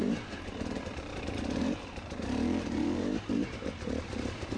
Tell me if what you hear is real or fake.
fake